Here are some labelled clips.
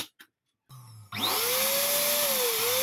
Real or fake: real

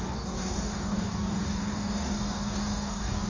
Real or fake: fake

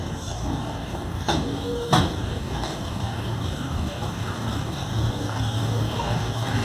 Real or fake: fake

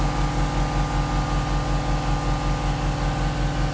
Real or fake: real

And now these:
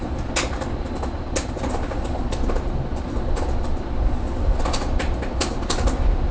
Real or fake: real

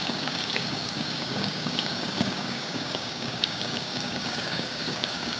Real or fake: fake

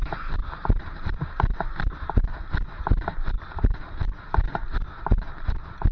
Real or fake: real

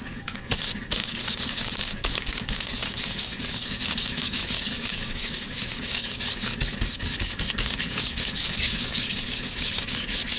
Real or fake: fake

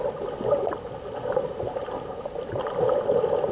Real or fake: real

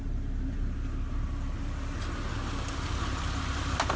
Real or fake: real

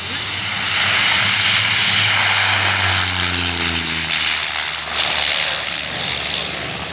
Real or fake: real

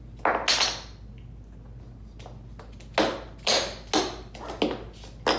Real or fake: real